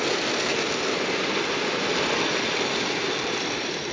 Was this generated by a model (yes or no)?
yes